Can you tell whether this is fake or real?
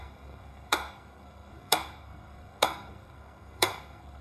fake